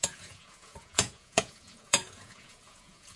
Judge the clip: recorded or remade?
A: remade